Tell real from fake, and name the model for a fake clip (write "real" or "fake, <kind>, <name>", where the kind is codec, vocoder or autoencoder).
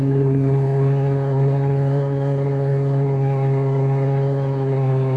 fake, codec, SNAC